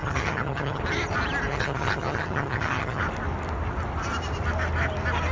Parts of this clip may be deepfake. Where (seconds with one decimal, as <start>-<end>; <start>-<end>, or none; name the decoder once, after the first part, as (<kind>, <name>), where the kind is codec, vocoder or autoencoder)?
0.0-0.8 (vocoder, HiFi-GAN); 1.5-3.0